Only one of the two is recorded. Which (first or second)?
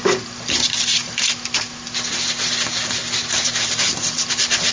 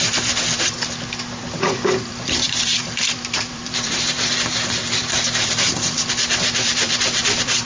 first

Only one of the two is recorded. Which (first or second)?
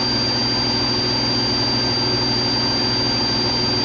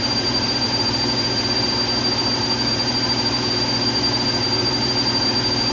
first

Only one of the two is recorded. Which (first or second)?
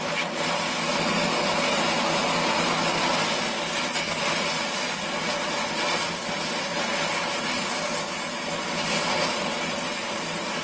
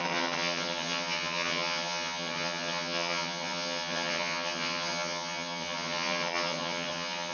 first